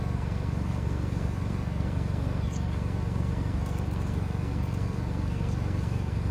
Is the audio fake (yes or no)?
yes